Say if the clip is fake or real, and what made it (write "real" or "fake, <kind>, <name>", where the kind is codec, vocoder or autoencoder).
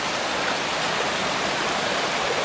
real